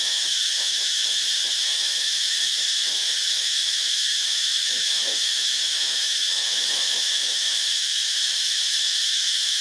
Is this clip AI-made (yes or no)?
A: yes